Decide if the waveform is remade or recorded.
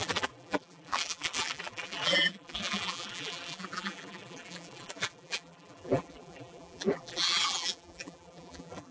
remade